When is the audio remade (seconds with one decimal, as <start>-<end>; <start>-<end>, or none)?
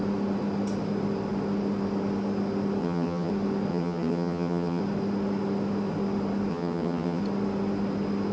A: 2.8-3.3; 3.7-4.8; 6.5-7.2